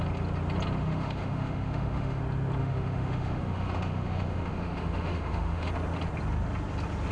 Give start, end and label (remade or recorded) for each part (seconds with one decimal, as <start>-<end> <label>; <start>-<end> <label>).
0.0-0.8 recorded; 0.8-2.2 remade; 2.2-2.6 recorded; 2.6-5.7 remade; 5.7-7.1 recorded